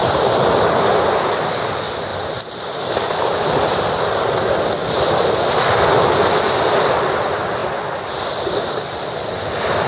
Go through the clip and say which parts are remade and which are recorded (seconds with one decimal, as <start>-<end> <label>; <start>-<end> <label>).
0.0-9.9 recorded